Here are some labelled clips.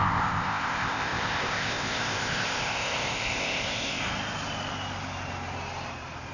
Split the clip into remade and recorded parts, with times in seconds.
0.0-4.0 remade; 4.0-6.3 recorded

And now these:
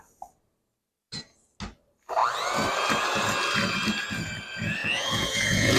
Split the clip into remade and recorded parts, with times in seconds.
0.0-4.8 recorded; 4.8-5.8 remade

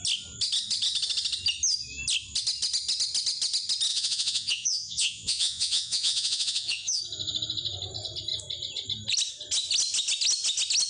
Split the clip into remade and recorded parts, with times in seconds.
0.0-3.9 recorded; 3.9-7.0 remade; 7.0-10.9 recorded

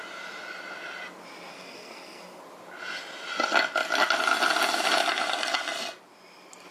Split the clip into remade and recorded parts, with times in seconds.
0.0-1.5 recorded; 1.5-2.4 remade; 2.4-6.7 recorded

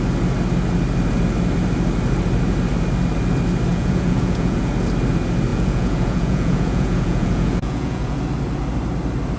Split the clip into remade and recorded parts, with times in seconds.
0.0-3.7 recorded; 3.7-4.7 remade; 4.7-5.5 recorded; 5.5-8.2 remade; 8.2-9.4 recorded